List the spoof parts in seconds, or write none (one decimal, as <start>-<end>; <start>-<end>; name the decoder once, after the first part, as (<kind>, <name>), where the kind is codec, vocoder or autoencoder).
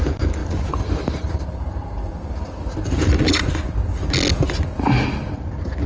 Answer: 0.4-3.5 (vocoder, BigVGAN v2)